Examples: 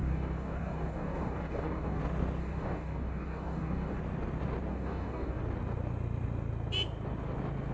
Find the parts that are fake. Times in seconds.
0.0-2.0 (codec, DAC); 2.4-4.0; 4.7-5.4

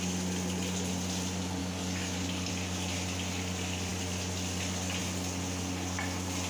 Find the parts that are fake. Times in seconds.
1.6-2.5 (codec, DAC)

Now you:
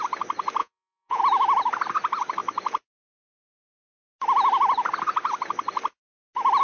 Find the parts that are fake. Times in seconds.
0.6-1.2 (vocoder, Vocos)

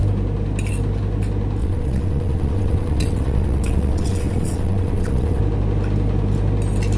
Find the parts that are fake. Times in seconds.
1.6-5.4 (vocoder, WaveNeXt)

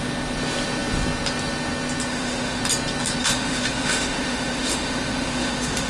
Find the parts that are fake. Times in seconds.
2.1-2.6 (autoencoder, DAC-VAE); 3.2-5.9